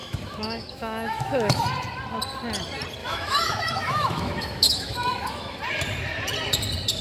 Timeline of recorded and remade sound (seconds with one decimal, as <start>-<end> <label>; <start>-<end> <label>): 0.0-1.6 remade; 1.6-3.0 recorded; 3.0-5.6 remade; 5.6-7.0 recorded